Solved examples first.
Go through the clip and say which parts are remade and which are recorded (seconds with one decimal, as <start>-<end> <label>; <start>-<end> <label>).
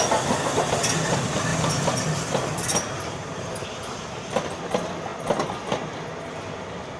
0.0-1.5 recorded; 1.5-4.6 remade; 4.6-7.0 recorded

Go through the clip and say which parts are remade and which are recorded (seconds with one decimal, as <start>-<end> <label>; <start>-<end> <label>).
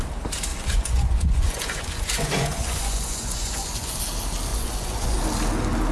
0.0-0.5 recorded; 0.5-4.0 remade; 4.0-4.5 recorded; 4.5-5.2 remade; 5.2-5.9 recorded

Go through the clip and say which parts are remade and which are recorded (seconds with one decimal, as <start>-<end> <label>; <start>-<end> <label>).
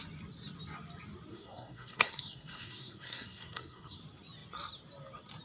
0.0-1.3 recorded; 1.3-4.0 remade; 4.0-5.4 recorded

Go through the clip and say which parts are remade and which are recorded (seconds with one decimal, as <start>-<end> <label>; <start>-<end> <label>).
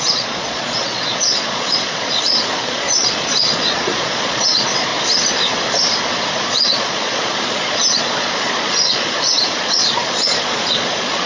0.0-4.9 remade; 4.9-6.3 recorded; 6.3-11.3 remade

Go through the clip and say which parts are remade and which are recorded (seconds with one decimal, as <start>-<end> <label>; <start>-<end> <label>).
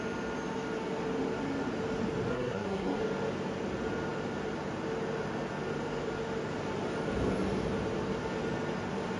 0.0-2.3 recorded; 2.3-3.0 remade; 3.0-9.2 recorded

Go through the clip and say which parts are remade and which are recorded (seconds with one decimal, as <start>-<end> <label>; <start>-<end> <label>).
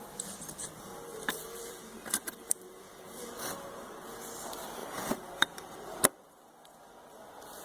0.0-0.6 recorded; 0.6-3.3 remade; 3.3-4.8 recorded; 4.8-6.0 remade; 6.0-7.6 recorded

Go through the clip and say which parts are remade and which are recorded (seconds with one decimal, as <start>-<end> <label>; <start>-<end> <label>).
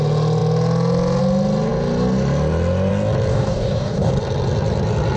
0.0-3.3 recorded; 3.3-4.1 remade; 4.1-5.2 recorded